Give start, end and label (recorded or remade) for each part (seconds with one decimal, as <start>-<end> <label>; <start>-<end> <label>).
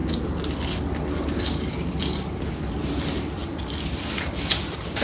0.0-5.0 recorded